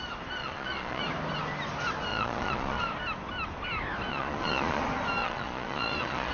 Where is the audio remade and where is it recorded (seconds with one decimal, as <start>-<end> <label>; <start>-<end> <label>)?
0.0-0.4 recorded; 0.4-1.0 remade; 1.0-2.1 recorded; 2.1-2.8 remade; 2.8-4.1 recorded; 4.1-4.8 remade; 4.8-5.2 recorded; 5.2-6.3 remade